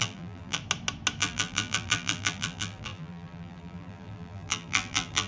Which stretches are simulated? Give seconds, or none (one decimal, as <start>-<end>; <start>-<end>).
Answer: 0.0-0.6; 1.2-5.3